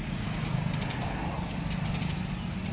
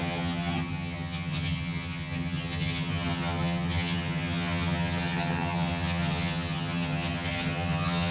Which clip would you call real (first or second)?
first